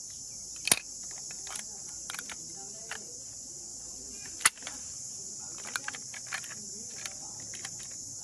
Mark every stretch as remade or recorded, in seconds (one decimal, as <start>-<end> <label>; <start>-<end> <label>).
0.0-3.7 recorded; 3.7-5.3 remade; 5.3-8.2 recorded